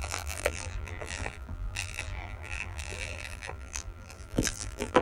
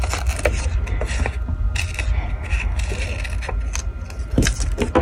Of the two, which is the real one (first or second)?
second